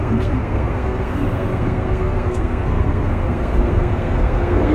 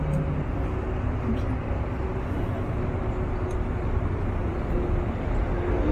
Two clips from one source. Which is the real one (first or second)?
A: second